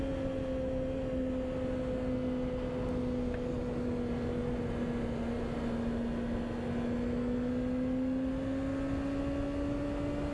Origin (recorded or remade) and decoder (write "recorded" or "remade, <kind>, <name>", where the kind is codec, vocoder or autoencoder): recorded